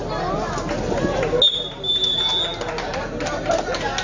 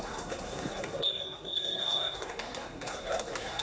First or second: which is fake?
second